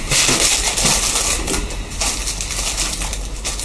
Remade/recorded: recorded